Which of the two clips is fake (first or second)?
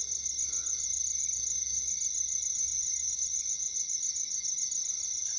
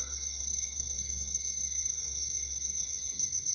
second